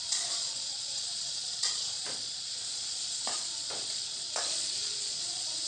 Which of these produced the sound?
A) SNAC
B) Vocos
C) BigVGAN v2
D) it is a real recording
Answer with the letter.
B